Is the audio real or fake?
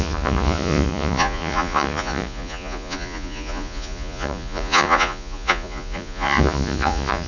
fake